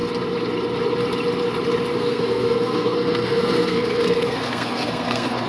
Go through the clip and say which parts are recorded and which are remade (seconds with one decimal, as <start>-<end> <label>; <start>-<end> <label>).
0.0-1.9 recorded; 1.9-5.5 remade